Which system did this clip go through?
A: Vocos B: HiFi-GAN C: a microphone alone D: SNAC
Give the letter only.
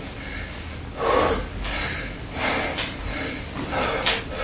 C